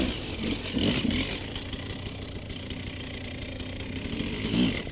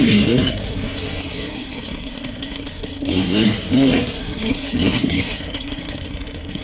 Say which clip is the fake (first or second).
second